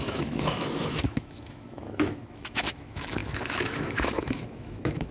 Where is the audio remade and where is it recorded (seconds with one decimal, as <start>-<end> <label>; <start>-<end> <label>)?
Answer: 0.0-5.1 remade